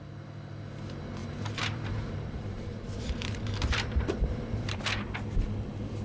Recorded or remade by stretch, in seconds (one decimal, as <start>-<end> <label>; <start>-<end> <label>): 0.0-1.2 recorded; 1.2-4.8 remade; 4.8-6.0 recorded